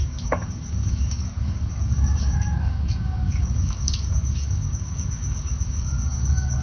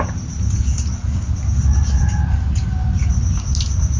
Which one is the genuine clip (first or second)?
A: second